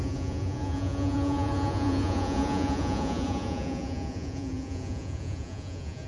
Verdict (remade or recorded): remade